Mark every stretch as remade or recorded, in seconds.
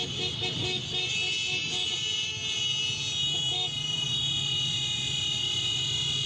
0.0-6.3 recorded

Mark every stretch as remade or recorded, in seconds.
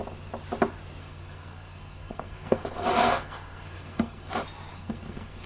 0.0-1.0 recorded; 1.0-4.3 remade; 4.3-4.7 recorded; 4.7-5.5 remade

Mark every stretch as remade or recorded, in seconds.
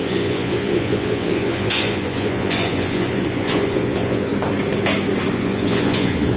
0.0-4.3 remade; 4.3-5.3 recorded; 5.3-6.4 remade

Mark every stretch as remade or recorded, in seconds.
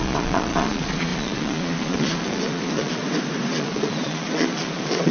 0.0-3.0 remade; 3.0-3.5 recorded; 3.5-5.1 remade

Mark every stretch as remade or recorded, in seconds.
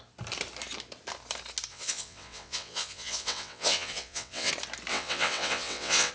0.0-1.7 recorded; 1.7-4.5 remade; 4.5-4.9 recorded; 4.9-6.1 remade